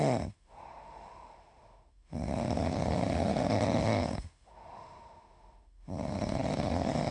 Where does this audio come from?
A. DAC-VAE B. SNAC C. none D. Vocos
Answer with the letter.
A